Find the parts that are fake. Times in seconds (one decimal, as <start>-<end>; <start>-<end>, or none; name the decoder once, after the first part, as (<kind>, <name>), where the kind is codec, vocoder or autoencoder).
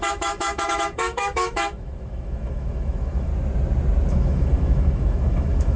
0.0-3.3 (autoencoder, DAC-VAE); 4.1-5.8